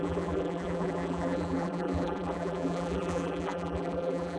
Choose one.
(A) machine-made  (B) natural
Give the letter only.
A